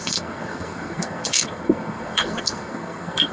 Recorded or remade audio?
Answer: remade